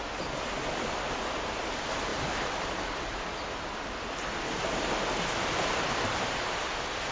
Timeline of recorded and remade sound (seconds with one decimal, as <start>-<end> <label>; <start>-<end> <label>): 0.0-7.1 recorded

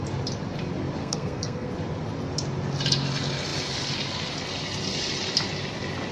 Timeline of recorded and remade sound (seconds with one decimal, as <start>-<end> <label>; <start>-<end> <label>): 0.0-1.0 recorded; 1.0-1.7 remade; 1.7-6.1 recorded

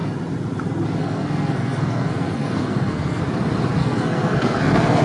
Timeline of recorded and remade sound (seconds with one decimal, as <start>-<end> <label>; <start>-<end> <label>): 0.0-1.0 recorded; 1.0-3.2 remade; 3.2-3.8 recorded; 3.8-5.0 remade

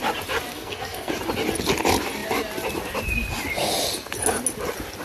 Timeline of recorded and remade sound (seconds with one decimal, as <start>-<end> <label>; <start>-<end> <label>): 0.0-0.5 recorded; 0.5-1.1 remade; 1.1-5.0 recorded

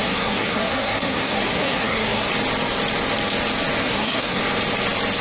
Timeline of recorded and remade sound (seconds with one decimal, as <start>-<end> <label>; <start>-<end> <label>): 0.0-2.3 remade; 2.3-3.8 recorded; 3.8-4.4 remade; 4.4-5.2 recorded

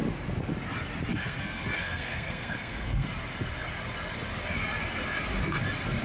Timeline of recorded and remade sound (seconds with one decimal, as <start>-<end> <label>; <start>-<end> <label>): 0.0-1.1 recorded; 1.1-3.1 remade; 3.1-6.0 recorded

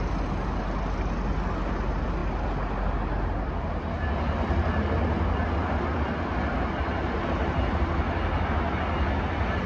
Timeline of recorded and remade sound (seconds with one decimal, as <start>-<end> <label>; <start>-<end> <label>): 0.0-9.7 recorded